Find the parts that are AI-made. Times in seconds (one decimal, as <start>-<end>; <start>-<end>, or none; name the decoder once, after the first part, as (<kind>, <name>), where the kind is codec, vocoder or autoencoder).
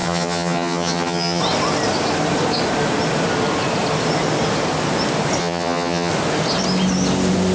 0.0-1.4 (vocoder, HiFi-GAN); 5.4-6.1